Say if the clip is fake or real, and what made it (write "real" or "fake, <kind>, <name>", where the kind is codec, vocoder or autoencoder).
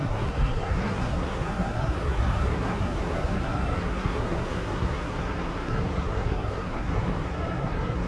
fake, codec, SNAC